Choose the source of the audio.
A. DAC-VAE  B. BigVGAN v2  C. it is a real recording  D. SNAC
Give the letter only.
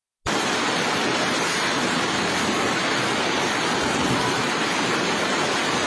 C